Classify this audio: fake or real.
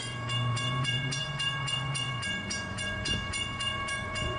fake